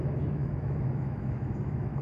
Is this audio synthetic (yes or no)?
yes